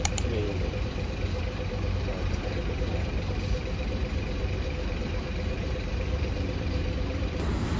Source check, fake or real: fake